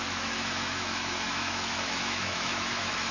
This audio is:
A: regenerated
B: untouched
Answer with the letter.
A